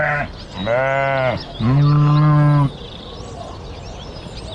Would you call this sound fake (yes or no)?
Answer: no